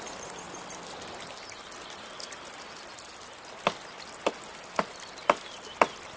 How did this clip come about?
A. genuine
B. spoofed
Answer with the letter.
A